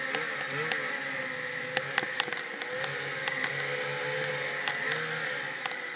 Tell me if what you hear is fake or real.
real